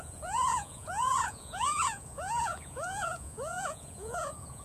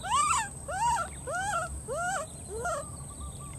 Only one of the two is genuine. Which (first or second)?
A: second